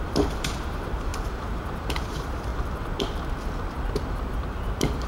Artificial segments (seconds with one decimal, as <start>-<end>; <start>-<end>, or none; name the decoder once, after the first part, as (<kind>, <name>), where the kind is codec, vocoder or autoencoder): 0.0-1.1 (vocoder, BigVGAN v2); 2.0-2.5; 4.3-5.1